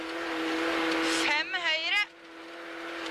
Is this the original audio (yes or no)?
yes